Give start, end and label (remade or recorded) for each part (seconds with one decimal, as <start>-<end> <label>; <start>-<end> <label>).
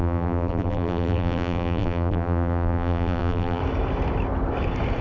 0.0-3.6 remade; 3.6-5.0 recorded